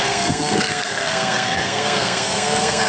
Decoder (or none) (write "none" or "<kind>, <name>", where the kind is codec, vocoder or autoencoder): codec, SNAC